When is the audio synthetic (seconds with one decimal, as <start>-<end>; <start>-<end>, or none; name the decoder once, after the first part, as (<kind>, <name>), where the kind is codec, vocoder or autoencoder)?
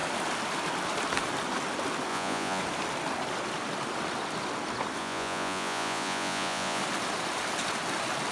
2.1-2.6 (vocoder, Vocos); 5.0-6.8